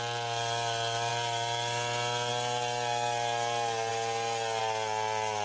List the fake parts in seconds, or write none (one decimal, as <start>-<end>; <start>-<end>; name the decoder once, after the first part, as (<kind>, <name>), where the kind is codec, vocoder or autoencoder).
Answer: none

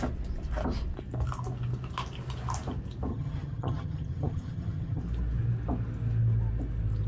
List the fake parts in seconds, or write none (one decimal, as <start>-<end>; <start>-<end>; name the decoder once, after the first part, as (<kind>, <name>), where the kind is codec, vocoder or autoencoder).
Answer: 3.1-5.0 (vocoder, HiFi-GAN)

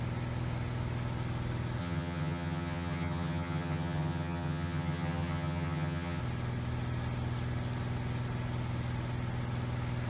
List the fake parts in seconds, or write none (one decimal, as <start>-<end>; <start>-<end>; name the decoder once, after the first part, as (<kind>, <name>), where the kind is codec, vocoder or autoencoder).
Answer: 1.8-6.2 (vocoder, HiFi-GAN)

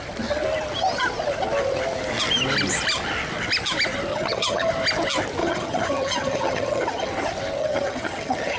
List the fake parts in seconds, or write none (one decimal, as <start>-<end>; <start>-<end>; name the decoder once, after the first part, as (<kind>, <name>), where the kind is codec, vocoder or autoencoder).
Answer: 4.1-4.7 (vocoder, HiFi-GAN); 5.4-7.1; 7.6-8.6

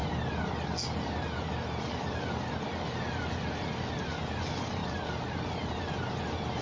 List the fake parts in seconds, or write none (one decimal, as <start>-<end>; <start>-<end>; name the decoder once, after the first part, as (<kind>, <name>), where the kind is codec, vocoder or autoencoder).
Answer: none

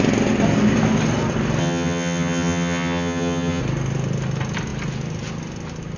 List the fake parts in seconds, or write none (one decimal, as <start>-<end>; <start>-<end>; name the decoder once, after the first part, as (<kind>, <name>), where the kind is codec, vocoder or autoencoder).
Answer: 1.6-3.6 (vocoder, HiFi-GAN)

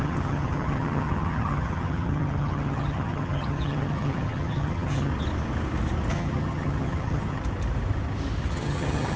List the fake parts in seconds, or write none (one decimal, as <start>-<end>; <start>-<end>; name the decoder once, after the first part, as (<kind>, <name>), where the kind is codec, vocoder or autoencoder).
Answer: 0.0-5.1 (vocoder, HiFi-GAN); 6.1-7.4; 8.5-9.2